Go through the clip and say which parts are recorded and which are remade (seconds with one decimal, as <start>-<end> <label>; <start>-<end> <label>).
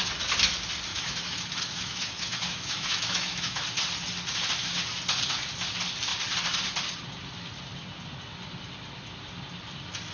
0.0-0.9 recorded; 0.9-3.6 remade; 3.6-10.1 recorded